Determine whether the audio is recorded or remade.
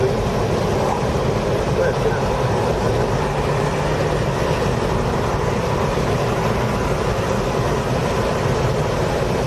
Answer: recorded